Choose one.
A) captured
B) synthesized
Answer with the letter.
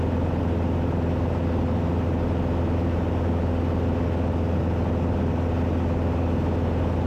A